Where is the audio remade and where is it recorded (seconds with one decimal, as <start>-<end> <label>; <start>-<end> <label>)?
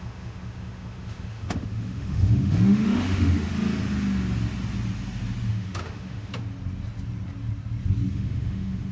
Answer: 0.0-3.5 remade; 3.5-5.5 recorded; 5.5-6.3 remade; 6.3-8.1 recorded; 8.1-8.9 remade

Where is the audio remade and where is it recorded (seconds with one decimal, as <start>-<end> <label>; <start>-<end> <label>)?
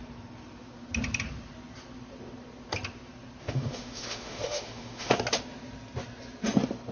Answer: 0.0-3.4 recorded; 3.4-5.1 remade; 5.1-6.9 recorded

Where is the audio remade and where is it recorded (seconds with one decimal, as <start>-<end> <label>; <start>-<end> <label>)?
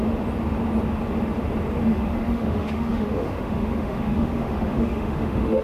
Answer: 0.0-1.9 recorded; 1.9-5.6 remade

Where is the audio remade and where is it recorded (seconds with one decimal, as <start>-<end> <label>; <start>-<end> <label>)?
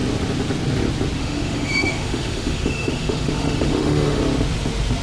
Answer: 0.0-1.2 recorded; 1.2-4.2 remade; 4.2-5.0 recorded